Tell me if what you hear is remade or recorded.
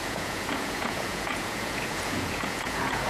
remade